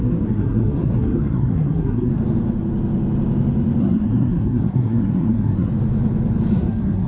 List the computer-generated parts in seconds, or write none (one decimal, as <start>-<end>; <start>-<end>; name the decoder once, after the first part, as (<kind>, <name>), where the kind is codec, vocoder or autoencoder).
0.0-2.1 (codec, SNAC); 3.8-5.7; 6.5-7.1